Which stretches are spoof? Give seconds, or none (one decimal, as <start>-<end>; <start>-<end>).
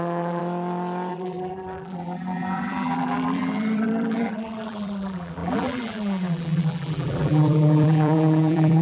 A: 0.0-0.4; 1.1-8.8